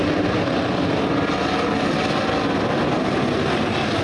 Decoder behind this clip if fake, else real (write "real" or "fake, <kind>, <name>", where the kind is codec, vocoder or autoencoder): real